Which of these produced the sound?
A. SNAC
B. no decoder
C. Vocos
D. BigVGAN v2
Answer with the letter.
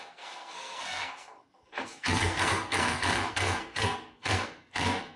A